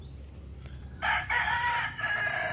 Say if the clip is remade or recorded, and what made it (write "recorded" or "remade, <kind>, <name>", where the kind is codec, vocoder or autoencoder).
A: remade, vocoder, BigVGAN v2